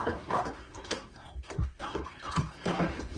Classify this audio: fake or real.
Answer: fake